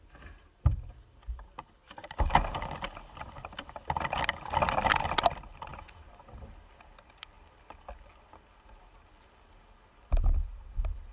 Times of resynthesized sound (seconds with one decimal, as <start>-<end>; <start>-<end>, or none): 2.0-3.8